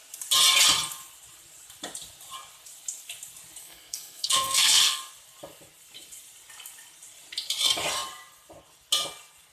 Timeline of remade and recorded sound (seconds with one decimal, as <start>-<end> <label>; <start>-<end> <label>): 0.0-3.6 recorded; 3.6-5.0 remade; 5.0-9.5 recorded